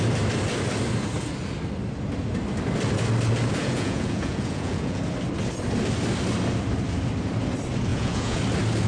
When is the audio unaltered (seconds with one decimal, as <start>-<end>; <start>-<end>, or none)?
0.0-3.6; 5.0-7.9; 8.4-8.9